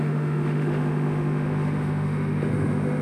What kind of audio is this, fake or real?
fake